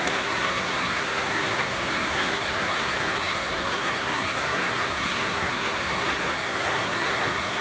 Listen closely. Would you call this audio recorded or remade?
remade